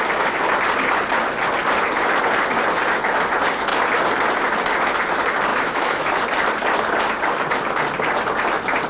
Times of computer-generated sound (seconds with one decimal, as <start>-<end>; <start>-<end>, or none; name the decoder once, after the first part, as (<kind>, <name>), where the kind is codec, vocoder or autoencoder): 5.5-6.2 (autoencoder, DAC-VAE)